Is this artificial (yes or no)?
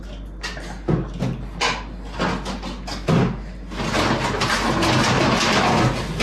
no